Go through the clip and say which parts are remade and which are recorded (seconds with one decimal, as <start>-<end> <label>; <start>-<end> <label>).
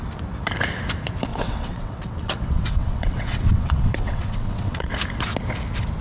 0.0-1.3 recorded; 1.3-4.9 remade; 4.9-6.0 recorded